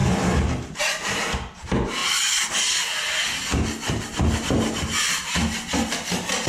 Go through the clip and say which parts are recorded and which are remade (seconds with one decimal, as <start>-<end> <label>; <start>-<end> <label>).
0.0-6.5 recorded